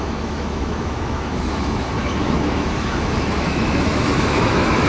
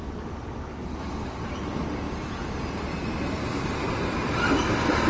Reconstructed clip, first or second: first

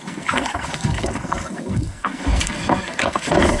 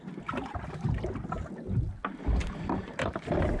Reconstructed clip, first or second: first